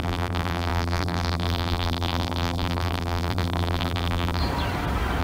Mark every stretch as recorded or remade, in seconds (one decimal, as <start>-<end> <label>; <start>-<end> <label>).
0.0-4.4 remade; 4.4-5.2 recorded